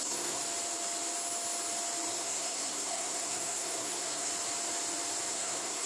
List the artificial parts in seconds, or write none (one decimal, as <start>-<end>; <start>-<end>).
0.0-0.4; 2.1-4.3; 5.3-5.9